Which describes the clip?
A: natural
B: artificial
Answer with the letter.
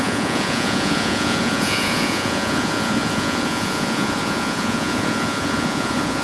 B